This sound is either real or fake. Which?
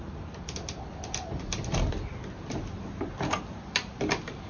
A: real